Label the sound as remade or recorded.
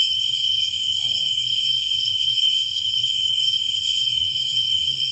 remade